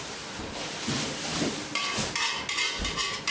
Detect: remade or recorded recorded